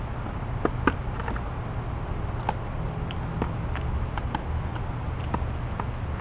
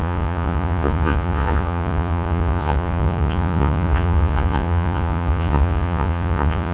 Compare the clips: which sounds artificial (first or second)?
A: second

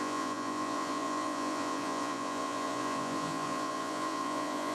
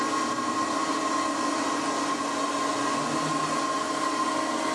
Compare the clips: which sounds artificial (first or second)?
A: first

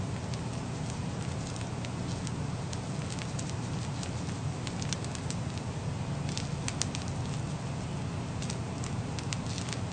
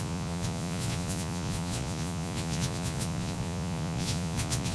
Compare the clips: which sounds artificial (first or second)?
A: second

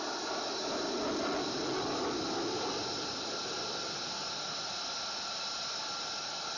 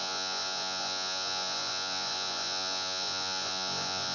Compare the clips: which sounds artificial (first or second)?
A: second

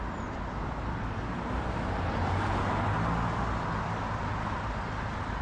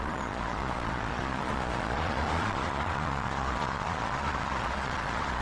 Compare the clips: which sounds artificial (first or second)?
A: second